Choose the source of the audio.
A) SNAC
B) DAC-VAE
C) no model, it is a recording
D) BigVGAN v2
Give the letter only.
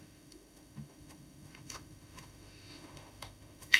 B